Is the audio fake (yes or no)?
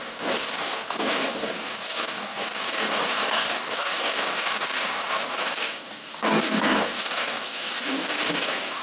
yes